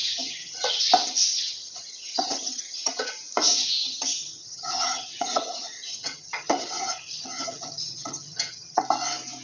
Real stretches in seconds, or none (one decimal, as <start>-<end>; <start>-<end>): 0.8-1.3; 3.1-3.8; 8.8-9.4